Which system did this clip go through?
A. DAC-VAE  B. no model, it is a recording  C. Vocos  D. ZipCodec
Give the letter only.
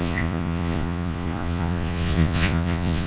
C